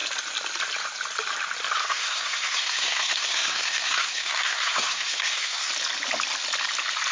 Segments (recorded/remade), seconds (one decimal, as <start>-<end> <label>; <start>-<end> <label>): 0.0-1.8 recorded; 1.8-5.7 remade; 5.7-7.1 recorded

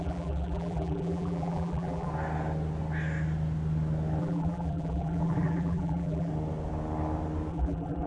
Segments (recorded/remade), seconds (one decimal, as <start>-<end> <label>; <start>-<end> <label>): 0.0-2.1 remade; 2.1-4.2 recorded; 4.2-6.3 remade; 6.3-7.5 recorded; 7.5-8.1 remade

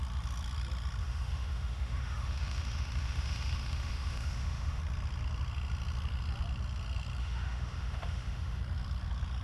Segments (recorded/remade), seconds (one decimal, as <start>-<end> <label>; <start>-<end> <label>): 0.0-1.0 recorded; 1.0-4.8 remade; 4.8-7.2 recorded; 7.2-8.6 remade; 8.6-9.4 recorded

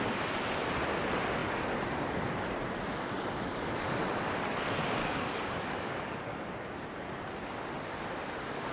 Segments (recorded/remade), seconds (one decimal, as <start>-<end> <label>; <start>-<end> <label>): 0.0-5.0 recorded; 5.0-6.7 remade; 6.7-8.7 recorded

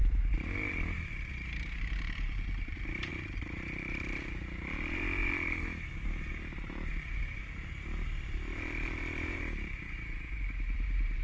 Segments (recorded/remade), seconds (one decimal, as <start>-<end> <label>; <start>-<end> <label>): 0.0-11.2 remade

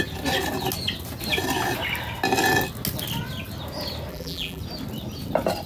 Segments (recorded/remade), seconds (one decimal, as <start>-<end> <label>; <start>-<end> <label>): 0.0-4.1 recorded; 4.1-4.6 remade; 4.6-5.7 recorded

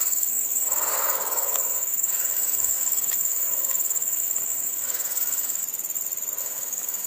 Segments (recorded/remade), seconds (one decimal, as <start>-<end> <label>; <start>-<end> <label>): 0.0-5.6 remade; 5.6-6.4 recorded; 6.4-7.1 remade

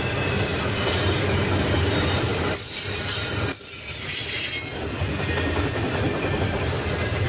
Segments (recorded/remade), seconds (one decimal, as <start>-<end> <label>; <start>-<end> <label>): 0.0-7.3 recorded